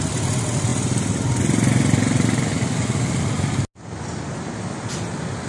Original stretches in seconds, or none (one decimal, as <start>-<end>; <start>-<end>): 0.0-5.5